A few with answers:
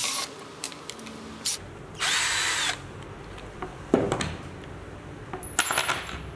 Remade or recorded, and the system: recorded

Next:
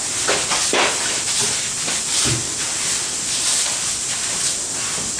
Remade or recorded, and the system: recorded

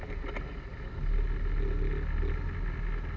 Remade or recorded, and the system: recorded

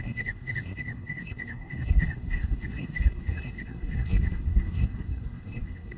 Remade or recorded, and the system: remade, codec, SNAC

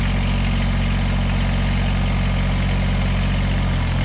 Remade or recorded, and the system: recorded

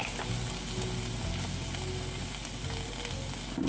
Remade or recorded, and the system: recorded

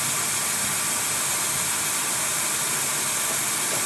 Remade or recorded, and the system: recorded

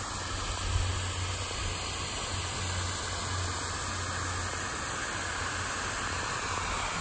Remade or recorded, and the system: recorded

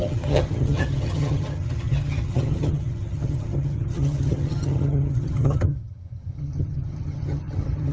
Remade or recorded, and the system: remade, vocoder, HiFi-GAN